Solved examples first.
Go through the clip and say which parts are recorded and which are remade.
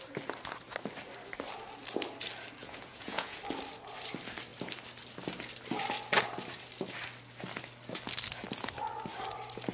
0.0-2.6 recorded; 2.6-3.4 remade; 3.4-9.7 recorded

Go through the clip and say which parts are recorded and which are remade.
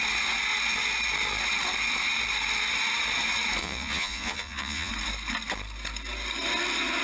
0.0-3.6 recorded; 3.6-4.9 remade; 4.9-7.0 recorded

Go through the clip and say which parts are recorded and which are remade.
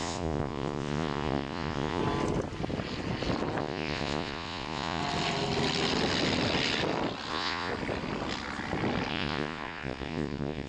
0.0-2.0 remade; 2.0-3.6 recorded; 3.6-5.0 remade; 5.0-7.3 recorded; 7.3-7.7 remade; 7.7-9.1 recorded; 9.1-10.7 remade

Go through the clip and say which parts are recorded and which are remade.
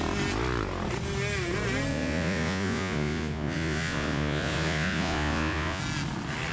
0.0-1.9 recorded; 1.9-5.8 remade; 5.8-6.5 recorded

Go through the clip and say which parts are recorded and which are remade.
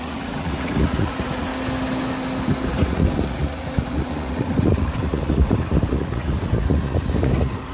0.0-1.5 remade; 1.5-2.7 recorded; 2.7-7.7 remade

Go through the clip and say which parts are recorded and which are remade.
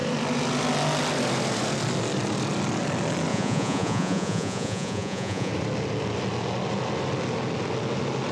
0.0-3.3 recorded; 3.3-5.5 remade; 5.5-8.3 recorded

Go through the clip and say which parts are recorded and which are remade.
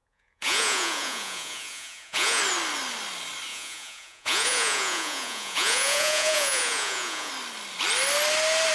0.0-2.4 remade; 2.4-3.5 recorded; 3.5-7.3 remade; 7.3-8.7 recorded